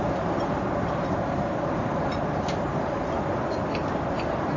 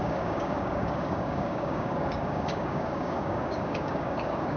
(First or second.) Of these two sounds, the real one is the first